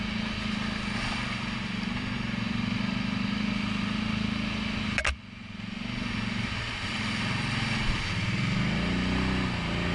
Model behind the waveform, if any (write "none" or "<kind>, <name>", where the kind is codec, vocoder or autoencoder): none